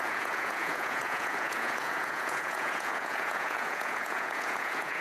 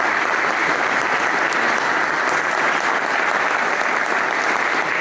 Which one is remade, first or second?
first